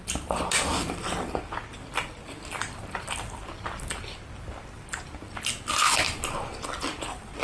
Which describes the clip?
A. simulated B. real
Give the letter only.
B